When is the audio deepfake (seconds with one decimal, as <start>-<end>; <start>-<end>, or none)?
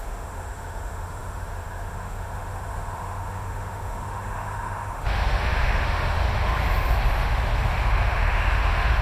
0.0-9.0